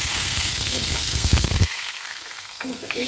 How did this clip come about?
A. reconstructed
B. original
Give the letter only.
A